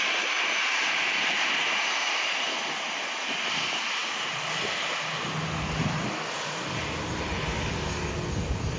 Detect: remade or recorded recorded